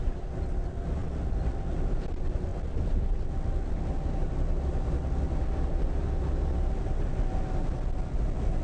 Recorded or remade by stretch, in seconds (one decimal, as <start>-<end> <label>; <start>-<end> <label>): 0.0-8.6 recorded